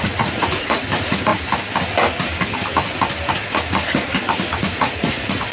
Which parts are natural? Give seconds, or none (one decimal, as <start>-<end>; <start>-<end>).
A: 1.3-4.6